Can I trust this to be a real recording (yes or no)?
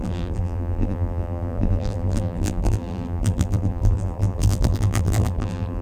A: no